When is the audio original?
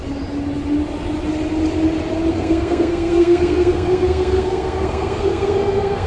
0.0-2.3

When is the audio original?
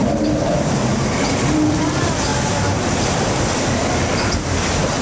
0.0-5.0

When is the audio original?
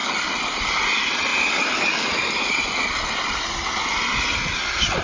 0.7-5.0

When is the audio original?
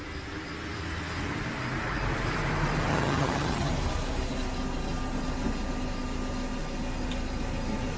0.0-2.9; 3.7-8.0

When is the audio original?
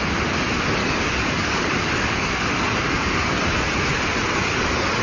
0.0-0.8; 3.4-5.0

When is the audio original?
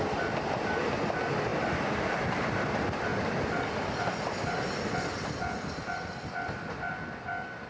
0.0-7.7